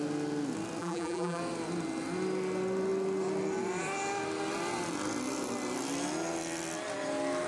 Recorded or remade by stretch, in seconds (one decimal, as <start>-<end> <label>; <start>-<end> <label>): 0.0-0.8 recorded; 0.8-1.4 remade; 1.4-7.5 recorded

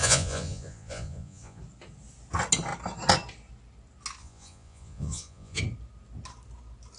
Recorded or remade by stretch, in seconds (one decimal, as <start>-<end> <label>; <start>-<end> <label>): 0.0-1.6 remade; 1.6-4.2 recorded; 4.2-5.6 remade; 5.6-7.0 recorded

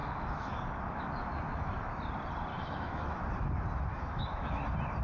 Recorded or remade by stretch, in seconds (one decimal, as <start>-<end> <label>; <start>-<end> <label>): 0.0-1.0 remade; 1.0-1.5 recorded; 1.5-2.0 remade; 2.0-2.5 recorded; 2.5-3.2 remade; 3.2-3.9 recorded; 3.9-4.6 remade; 4.6-5.0 recorded

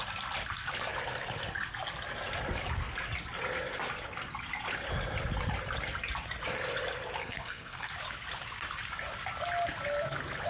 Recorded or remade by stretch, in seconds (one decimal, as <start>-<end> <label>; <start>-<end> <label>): 0.0-7.2 recorded; 7.2-7.9 remade; 7.9-10.5 recorded

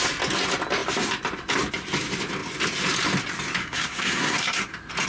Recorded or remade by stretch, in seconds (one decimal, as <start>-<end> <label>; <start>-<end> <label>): 0.0-3.6 recorded; 3.6-4.6 remade; 4.6-5.1 recorded

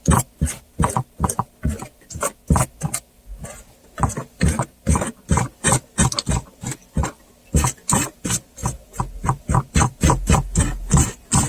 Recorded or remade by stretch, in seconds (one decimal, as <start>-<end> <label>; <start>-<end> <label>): 0.0-8.6 recorded; 8.6-9.4 remade; 9.4-11.5 recorded

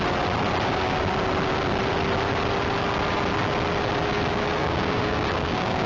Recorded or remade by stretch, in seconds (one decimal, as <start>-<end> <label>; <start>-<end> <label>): 0.0-4.6 recorded; 4.6-5.9 remade